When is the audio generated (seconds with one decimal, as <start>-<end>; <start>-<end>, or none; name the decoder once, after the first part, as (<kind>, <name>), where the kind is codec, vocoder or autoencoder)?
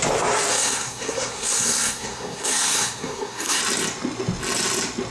0.5-3.6 (codec, SNAC)